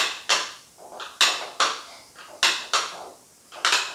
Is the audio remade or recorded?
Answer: recorded